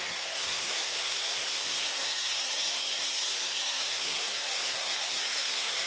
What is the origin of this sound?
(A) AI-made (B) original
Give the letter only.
A